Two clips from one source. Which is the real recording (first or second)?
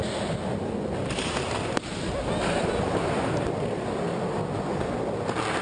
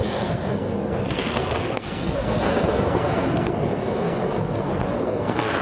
first